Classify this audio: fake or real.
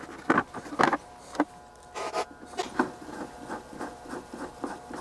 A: real